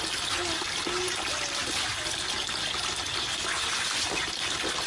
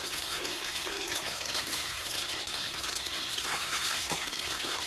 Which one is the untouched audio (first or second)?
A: first